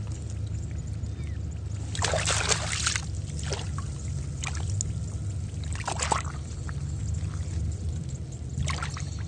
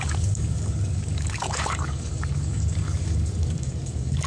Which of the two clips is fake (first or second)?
second